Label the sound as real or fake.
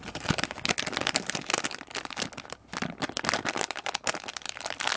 real